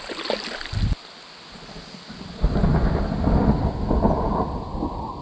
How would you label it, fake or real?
real